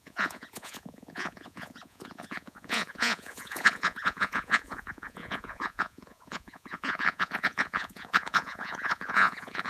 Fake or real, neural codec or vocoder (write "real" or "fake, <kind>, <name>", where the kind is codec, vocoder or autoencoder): fake, vocoder, Vocos